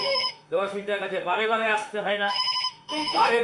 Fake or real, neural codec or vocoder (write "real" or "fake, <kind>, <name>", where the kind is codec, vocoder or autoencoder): fake, autoencoder, DAC-VAE